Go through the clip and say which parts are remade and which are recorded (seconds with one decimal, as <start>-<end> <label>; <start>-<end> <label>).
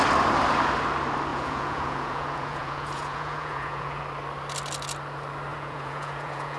0.0-1.3 recorded; 1.3-4.0 remade; 4.0-5.5 recorded; 5.5-6.6 remade